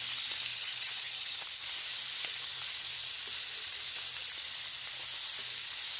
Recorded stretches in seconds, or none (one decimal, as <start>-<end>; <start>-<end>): 0.0-0.5; 1.4-6.0